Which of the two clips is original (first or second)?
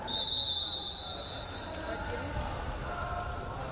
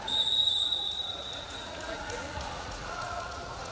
first